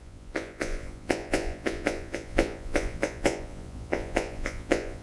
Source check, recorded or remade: remade